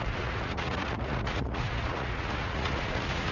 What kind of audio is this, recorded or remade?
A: remade